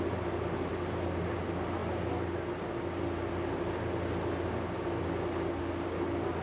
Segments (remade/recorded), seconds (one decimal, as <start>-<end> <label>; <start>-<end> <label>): 0.0-6.4 recorded